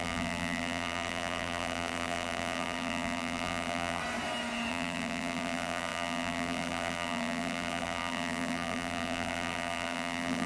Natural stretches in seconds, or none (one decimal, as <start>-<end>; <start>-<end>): 4.0-4.7